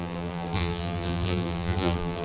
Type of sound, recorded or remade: remade